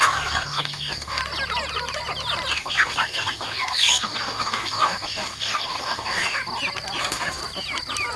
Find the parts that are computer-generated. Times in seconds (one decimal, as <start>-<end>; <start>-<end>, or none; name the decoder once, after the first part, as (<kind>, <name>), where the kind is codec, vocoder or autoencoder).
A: 0.0-1.2 (codec, DAC); 2.5-6.4; 7.0-7.4